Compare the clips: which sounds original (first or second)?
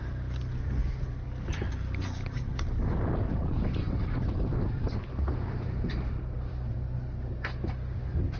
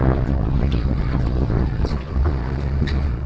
first